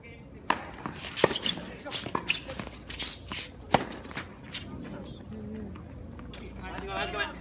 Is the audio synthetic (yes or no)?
no